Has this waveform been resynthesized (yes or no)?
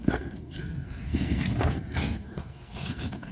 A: yes